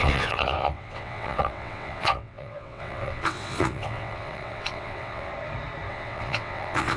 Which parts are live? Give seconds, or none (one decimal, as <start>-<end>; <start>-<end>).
5.3-5.9

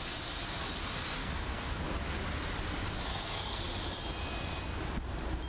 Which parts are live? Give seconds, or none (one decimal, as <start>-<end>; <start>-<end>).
0.0-1.2; 1.8-3.1; 3.6-5.5

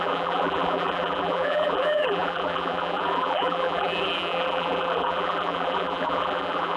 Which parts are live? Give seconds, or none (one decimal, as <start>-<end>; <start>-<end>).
none

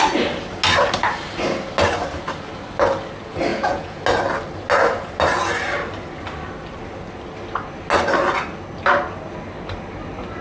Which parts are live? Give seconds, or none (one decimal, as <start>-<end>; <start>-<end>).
0.0-3.5; 4.0-10.4

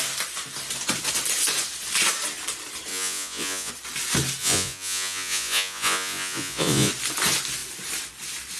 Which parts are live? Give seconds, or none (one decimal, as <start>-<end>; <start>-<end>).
0.0-2.9; 3.7-4.4; 6.9-8.6